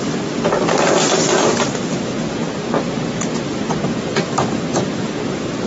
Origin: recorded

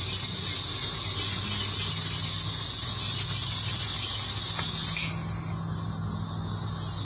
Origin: recorded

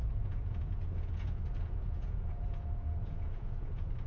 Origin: remade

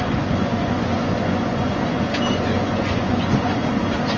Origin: remade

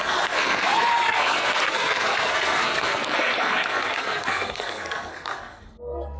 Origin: remade